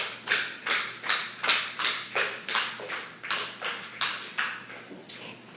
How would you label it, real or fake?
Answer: real